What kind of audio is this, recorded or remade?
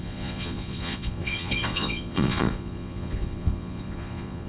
remade